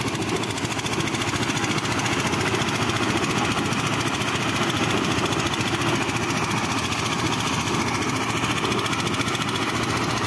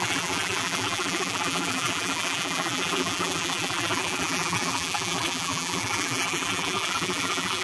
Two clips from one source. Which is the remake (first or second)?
second